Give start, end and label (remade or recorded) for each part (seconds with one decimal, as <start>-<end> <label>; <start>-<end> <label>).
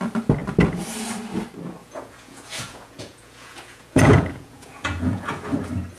0.0-1.8 recorded; 1.8-5.3 remade; 5.3-6.0 recorded